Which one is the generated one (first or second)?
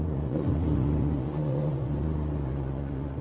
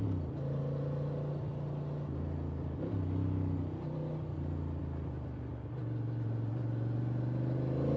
first